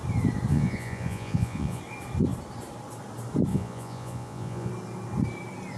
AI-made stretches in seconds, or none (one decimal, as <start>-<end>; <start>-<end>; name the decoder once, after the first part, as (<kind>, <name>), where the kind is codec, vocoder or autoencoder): 0.5-1.8 (vocoder, Vocos); 3.5-4.7